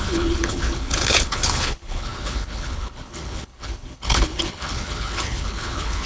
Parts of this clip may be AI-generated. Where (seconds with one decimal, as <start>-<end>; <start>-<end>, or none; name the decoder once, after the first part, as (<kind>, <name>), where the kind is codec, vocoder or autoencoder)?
0.0-6.1 (codec, HILCodec)